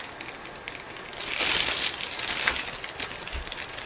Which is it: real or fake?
real